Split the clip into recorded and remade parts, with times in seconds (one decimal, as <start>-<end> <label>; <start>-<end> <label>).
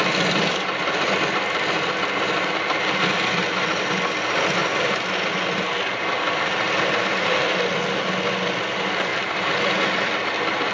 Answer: 0.0-10.7 recorded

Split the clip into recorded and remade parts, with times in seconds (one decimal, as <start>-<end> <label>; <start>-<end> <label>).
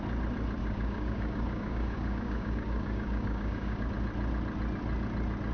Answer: 0.0-0.6 recorded; 0.6-3.9 remade; 3.9-5.5 recorded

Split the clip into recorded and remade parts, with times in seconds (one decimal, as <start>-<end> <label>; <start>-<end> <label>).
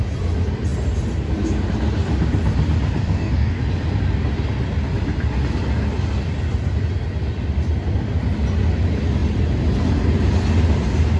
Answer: 0.0-3.0 recorded; 3.0-3.6 remade; 3.6-11.2 recorded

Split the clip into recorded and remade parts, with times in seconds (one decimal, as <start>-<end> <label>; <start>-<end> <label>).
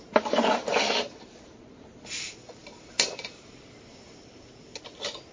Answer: 0.0-5.3 recorded